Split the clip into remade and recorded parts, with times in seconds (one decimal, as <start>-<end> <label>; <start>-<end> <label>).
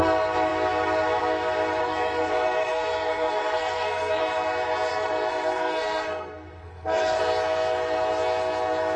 0.0-1.8 recorded; 1.8-4.2 remade; 4.2-4.9 recorded; 4.9-7.2 remade; 7.2-9.0 recorded